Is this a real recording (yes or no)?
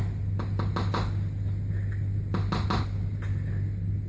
yes